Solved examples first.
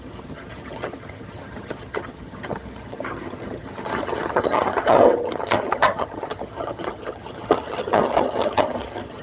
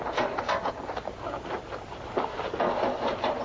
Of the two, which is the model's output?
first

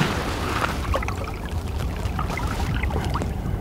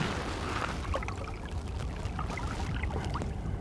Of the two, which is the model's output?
first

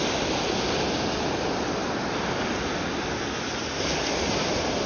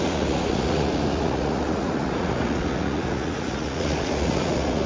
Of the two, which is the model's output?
second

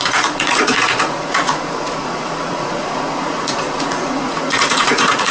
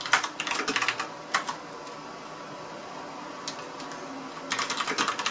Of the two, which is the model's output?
first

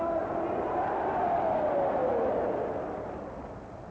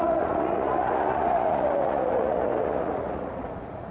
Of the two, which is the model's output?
second